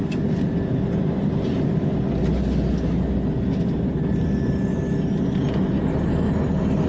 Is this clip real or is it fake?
real